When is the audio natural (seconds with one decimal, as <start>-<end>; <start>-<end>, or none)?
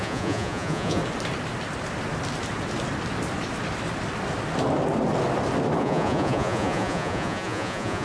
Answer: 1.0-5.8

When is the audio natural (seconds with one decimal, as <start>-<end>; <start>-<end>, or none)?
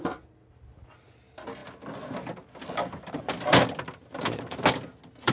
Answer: 0.0-5.3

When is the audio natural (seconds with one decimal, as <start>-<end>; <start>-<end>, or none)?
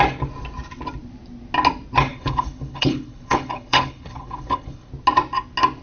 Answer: 0.0-2.1; 4.9-5.8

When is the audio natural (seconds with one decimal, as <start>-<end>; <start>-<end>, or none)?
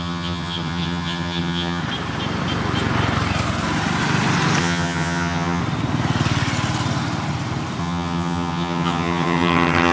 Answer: 1.8-4.6; 5.6-7.8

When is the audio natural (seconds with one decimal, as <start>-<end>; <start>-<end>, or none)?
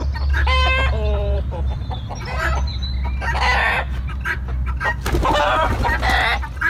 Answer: 0.0-1.2; 1.9-6.7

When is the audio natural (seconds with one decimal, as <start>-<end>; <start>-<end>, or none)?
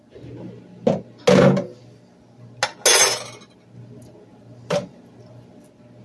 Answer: 0.0-4.3; 5.2-6.0